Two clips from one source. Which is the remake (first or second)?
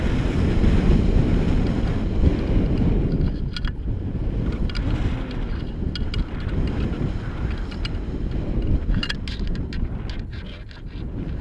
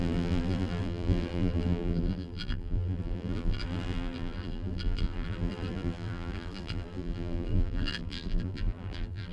second